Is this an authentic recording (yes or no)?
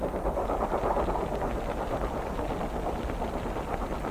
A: yes